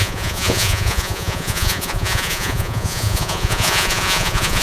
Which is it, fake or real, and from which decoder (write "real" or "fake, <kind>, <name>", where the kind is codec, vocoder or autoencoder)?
fake, vocoder, Vocos